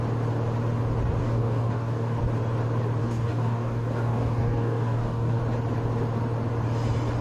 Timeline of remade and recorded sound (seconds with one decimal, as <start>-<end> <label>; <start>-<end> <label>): 0.0-1.2 recorded; 1.2-2.2 remade; 2.2-3.0 recorded; 3.0-5.4 remade; 5.4-7.2 recorded